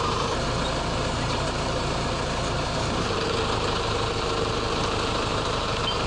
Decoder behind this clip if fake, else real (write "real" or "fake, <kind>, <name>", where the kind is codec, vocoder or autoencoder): fake, vocoder, BigVGAN v2